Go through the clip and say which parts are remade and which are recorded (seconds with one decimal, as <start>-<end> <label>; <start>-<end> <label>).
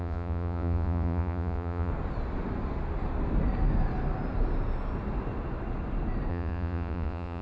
0.0-1.9 remade; 1.9-6.3 recorded; 6.3-7.4 remade